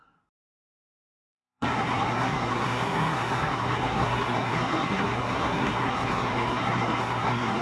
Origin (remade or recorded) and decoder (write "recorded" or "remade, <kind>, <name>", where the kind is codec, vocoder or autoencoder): remade, codec, SNAC